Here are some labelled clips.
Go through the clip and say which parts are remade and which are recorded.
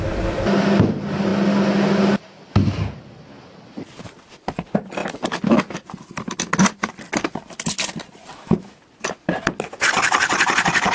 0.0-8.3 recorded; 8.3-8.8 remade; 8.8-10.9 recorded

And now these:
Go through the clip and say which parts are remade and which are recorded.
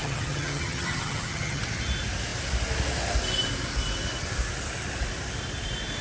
0.0-1.6 remade; 1.6-6.0 recorded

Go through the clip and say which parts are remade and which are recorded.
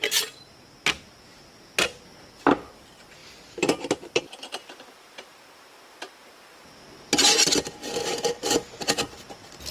0.0-9.7 recorded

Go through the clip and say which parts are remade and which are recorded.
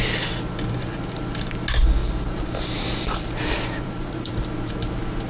0.0-2.0 recorded; 2.0-4.3 remade; 4.3-5.3 recorded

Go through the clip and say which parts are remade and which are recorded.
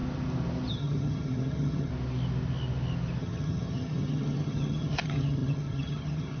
0.0-0.7 recorded; 0.7-1.9 remade; 1.9-3.2 recorded; 3.2-6.4 remade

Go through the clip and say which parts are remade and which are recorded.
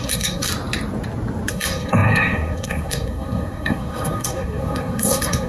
0.0-0.5 remade; 0.5-1.5 recorded; 1.5-5.5 remade